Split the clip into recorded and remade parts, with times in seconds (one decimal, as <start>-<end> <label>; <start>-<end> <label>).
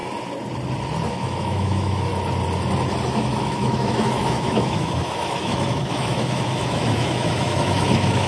0.0-1.1 recorded; 1.1-2.1 remade; 2.1-3.1 recorded; 3.1-8.3 remade